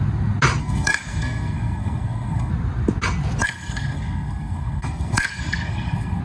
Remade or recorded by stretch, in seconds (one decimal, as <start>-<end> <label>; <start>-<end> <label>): 0.0-0.6 recorded; 0.6-2.5 remade; 2.5-3.4 recorded; 3.4-6.2 remade